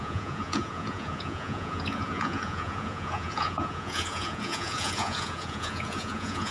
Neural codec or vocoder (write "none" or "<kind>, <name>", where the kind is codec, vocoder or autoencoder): vocoder, Vocos